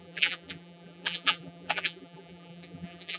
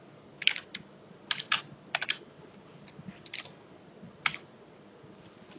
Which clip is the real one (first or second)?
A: second